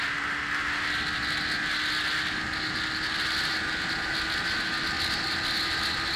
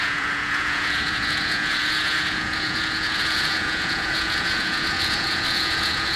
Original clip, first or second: first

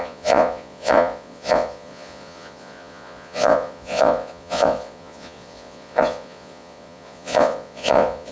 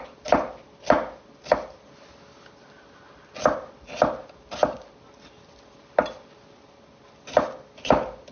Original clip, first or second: second